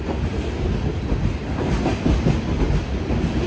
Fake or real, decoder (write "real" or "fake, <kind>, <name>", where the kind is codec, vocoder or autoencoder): real